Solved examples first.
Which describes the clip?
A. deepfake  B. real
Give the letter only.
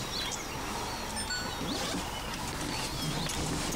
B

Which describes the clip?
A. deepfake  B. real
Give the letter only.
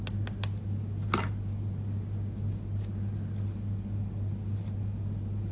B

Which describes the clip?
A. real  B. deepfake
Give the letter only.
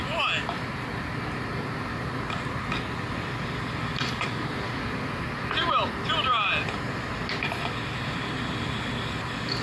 A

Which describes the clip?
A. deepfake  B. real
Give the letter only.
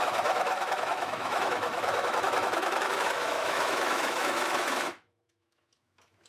A